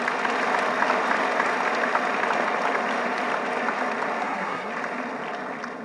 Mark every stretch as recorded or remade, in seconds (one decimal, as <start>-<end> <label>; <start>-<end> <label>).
0.0-4.2 recorded; 4.2-4.7 remade; 4.7-5.8 recorded